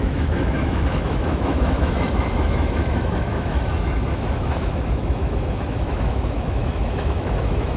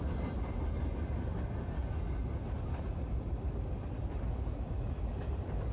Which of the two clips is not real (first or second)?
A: first